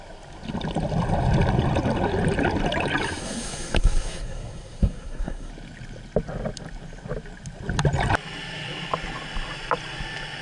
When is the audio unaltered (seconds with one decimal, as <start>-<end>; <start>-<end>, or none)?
0.0-3.2; 5.5-10.4

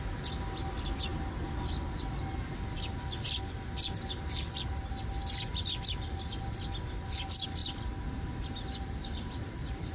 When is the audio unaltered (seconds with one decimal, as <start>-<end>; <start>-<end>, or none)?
0.0-9.9

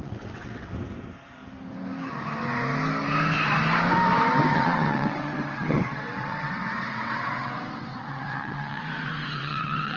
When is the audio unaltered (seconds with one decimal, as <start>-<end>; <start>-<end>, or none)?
0.7-4.5

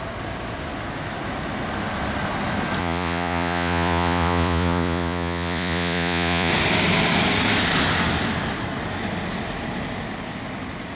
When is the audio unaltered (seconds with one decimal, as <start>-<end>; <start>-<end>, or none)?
0.0-2.8; 6.5-11.0

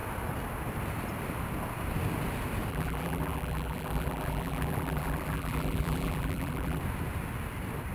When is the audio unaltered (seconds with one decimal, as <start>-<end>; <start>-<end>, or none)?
0.0-2.7; 6.8-7.9

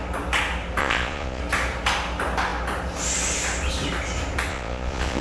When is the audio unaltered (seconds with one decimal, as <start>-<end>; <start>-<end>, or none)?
0.0-0.8; 1.4-4.5

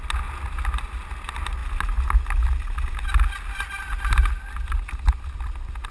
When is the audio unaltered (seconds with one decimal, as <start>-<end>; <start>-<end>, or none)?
0.0-5.9